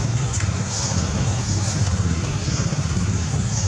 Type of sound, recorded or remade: remade